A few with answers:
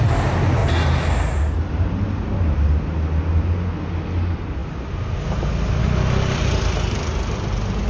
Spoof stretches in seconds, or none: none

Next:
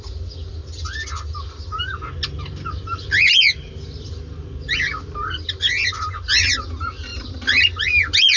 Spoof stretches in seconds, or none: none

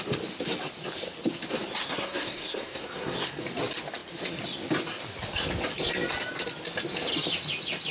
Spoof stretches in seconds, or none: 1.8-3.4 (codec, SNAC)

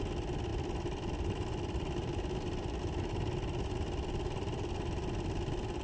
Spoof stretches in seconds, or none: 0.5-2.8 (vocoder, BigVGAN v2)